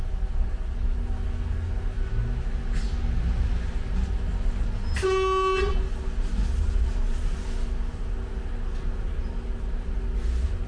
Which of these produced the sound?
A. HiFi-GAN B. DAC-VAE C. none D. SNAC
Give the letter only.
C